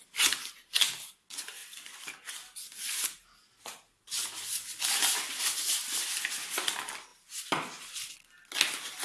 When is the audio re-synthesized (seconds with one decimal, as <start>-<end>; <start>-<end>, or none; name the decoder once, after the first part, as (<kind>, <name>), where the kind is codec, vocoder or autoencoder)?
1.6-3.5 (vocoder, BigVGAN v2); 7.1-8.1